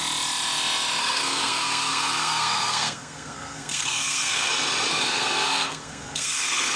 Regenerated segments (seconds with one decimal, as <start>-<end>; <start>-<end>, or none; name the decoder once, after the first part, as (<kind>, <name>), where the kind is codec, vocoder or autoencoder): 1.0-4.5 (codec, SNAC); 4.9-6.8